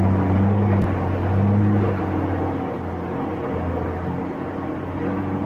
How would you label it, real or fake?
real